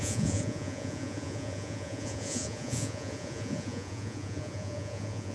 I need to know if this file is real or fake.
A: fake